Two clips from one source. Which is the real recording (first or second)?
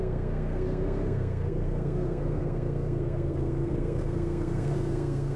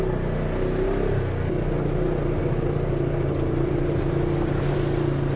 second